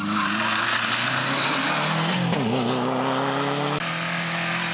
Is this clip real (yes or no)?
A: yes